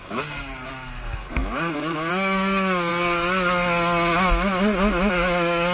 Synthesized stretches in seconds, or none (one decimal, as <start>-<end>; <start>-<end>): 0.0-2.9; 5.1-5.7